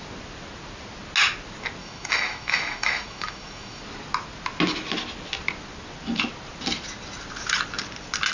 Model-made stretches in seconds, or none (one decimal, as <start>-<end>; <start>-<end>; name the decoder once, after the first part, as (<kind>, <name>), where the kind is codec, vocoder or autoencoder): 1.8-3.8 (autoencoder, DAC-VAE)

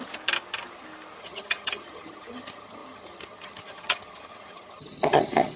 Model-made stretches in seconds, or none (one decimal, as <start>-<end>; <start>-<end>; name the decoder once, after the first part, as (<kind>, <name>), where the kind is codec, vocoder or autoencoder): 1.2-5.6 (vocoder, HiFi-GAN)

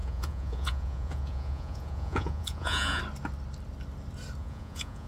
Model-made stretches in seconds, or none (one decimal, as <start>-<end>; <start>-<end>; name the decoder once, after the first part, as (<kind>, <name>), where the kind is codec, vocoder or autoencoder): 0.0-3.0 (vocoder, Vocos); 4.4-5.1

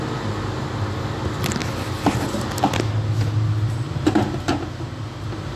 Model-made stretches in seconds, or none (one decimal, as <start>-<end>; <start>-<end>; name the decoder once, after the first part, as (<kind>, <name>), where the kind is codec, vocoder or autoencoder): none